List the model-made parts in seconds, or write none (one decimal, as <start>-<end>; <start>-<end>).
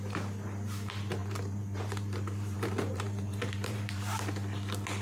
1.2-4.2